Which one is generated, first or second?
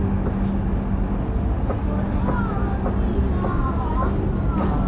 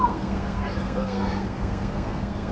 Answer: second